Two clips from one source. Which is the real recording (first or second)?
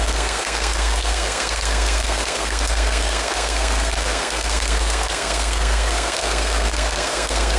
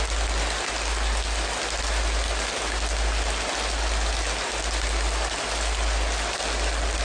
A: second